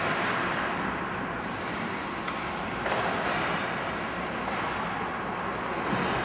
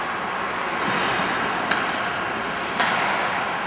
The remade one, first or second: first